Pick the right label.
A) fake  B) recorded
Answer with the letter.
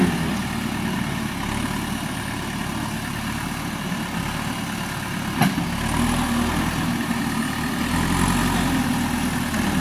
B